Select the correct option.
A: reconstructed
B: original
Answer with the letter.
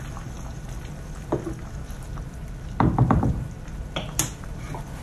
B